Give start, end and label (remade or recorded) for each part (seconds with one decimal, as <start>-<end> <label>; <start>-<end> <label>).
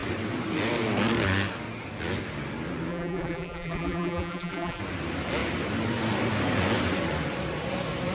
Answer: 0.0-2.9 recorded; 2.9-4.8 remade; 4.8-8.1 recorded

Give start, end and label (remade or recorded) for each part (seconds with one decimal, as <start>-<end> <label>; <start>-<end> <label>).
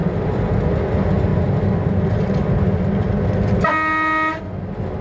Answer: 0.0-5.0 recorded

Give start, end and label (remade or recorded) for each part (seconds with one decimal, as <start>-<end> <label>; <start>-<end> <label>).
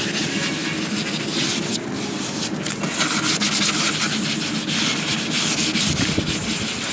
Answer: 0.0-6.9 recorded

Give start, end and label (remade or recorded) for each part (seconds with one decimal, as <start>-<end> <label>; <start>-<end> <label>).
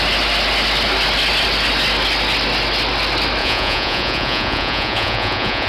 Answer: 0.0-3.4 recorded; 3.4-5.7 remade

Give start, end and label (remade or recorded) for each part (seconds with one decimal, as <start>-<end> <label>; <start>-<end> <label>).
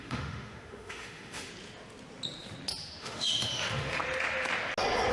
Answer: 0.0-1.5 remade; 1.5-3.0 recorded; 3.0-4.0 remade; 4.0-5.1 recorded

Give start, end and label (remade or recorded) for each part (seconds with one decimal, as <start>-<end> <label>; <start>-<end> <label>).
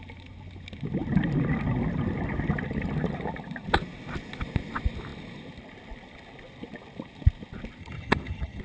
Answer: 0.0-7.8 recorded; 7.8-8.6 remade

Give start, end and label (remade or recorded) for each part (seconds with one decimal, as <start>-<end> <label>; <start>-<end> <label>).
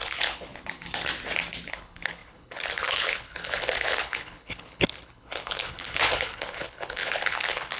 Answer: 0.0-0.5 remade; 0.5-1.7 recorded; 1.7-7.8 remade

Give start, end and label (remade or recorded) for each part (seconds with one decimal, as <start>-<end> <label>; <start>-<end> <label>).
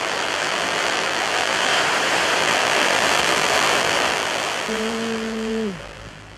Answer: 0.0-1.7 remade; 1.7-2.4 recorded; 2.4-6.4 remade